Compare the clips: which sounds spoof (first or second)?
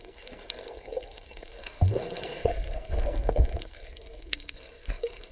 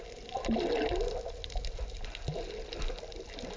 first